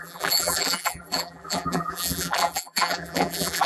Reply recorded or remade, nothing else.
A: remade